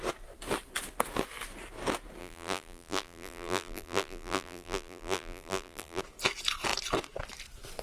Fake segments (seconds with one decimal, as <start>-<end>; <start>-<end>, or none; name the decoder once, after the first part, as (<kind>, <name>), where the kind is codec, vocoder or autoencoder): 2.2-6.0 (vocoder, BigVGAN v2)